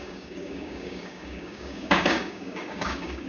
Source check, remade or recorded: remade